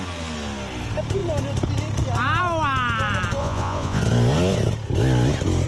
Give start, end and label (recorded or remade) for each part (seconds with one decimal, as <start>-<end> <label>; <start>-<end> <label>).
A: 0.0-3.4 recorded; 3.4-4.0 remade; 4.0-5.7 recorded